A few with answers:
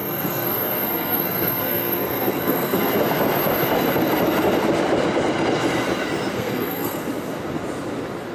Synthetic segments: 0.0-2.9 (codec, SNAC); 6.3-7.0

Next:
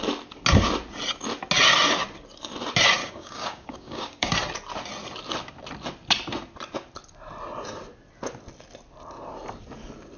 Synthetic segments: 3.0-4.3 (codec, DAC)

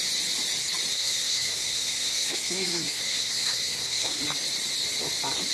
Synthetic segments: 0.9-4.2 (codec, SNAC)

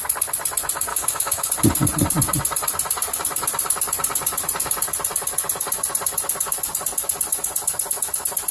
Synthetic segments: 0.9-1.5 (autoencoder, DAC-VAE)

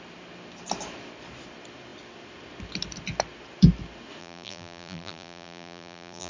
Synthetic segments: 4.2-6.3 (vocoder, BigVGAN v2)